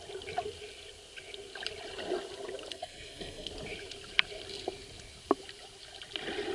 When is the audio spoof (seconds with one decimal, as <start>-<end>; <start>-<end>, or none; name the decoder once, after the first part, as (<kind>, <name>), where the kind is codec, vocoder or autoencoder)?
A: 2.7-3.5 (codec, SNAC)